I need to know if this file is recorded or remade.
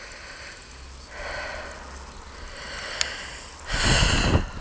recorded